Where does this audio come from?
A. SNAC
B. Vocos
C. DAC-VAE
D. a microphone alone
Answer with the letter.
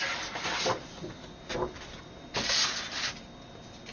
D